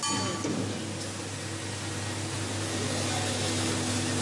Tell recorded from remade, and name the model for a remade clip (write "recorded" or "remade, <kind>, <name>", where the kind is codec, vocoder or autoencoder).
recorded